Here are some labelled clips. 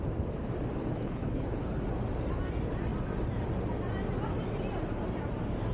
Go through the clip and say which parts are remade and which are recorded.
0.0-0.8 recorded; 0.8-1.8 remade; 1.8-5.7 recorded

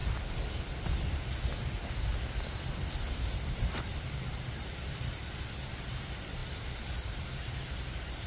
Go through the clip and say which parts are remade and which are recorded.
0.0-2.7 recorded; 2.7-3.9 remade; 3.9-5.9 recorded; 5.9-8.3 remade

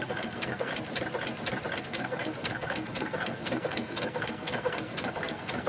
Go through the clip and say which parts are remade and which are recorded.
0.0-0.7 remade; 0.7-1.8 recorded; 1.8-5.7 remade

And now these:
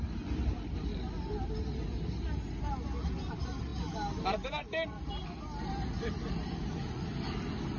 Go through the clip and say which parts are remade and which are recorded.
0.0-7.8 recorded

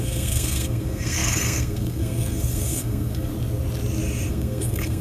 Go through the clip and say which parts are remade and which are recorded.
0.0-3.3 remade; 3.3-4.3 recorded; 4.3-5.0 remade

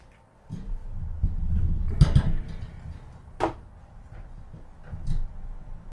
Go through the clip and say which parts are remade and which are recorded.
0.0-5.9 recorded